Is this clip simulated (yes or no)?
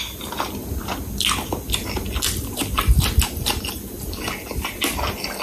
no